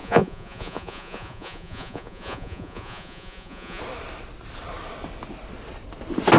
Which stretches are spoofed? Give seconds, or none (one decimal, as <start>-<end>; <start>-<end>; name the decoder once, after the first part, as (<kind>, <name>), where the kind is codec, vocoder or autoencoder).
0.0-3.8 (vocoder, Vocos)